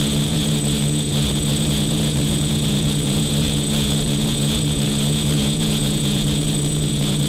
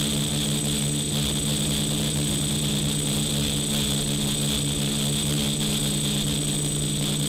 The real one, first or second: second